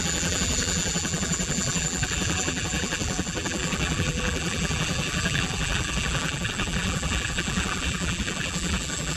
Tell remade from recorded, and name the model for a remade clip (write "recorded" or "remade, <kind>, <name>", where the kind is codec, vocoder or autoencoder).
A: remade, vocoder, BigVGAN v2